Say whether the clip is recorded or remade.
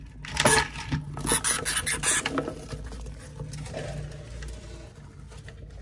recorded